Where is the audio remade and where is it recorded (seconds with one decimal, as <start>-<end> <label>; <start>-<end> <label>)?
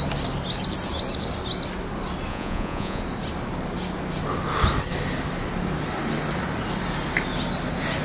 0.0-2.3 recorded; 2.3-3.0 remade; 3.0-8.0 recorded